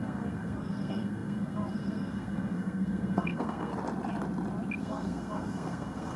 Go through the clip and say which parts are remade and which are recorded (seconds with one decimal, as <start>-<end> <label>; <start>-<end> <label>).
0.0-3.7 remade; 3.7-4.8 recorded; 4.8-6.2 remade